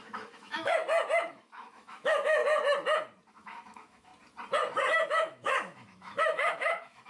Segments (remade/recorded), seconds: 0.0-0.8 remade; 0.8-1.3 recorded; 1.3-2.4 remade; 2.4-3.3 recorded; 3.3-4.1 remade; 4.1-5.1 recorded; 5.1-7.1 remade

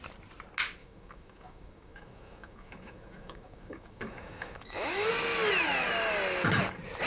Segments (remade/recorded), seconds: 0.0-0.8 recorded; 0.8-5.1 remade; 5.1-7.1 recorded

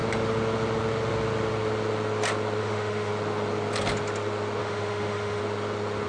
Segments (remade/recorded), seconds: 0.0-2.6 recorded; 2.6-3.1 remade; 3.1-4.6 recorded; 4.6-5.4 remade; 5.4-6.1 recorded